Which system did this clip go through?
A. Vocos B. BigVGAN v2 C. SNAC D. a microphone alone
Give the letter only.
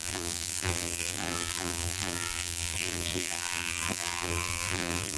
B